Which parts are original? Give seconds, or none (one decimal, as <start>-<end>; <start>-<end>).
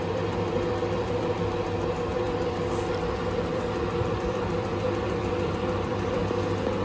1.4-2.1; 6.2-6.8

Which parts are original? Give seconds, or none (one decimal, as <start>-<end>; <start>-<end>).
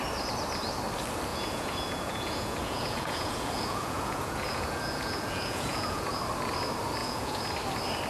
0.0-1.3; 6.2-7.0; 7.5-8.1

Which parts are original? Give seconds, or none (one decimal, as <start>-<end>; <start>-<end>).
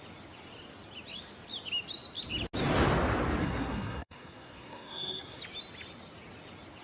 0.0-3.4; 5.4-6.8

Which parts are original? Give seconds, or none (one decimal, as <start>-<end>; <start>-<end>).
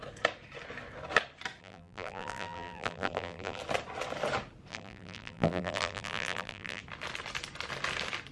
0.0-1.6; 3.6-4.7; 6.8-8.3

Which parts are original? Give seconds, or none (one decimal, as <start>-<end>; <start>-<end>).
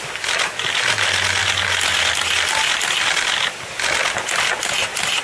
0.0-5.2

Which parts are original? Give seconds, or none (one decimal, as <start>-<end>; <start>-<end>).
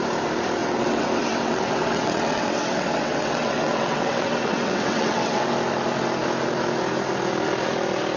0.0-0.6; 5.5-8.2